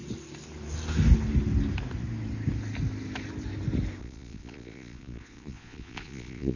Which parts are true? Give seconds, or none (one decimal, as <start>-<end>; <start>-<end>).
0.0-4.0